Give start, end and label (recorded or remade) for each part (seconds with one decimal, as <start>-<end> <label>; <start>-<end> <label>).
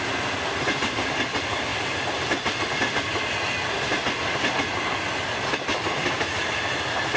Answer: 0.0-7.2 recorded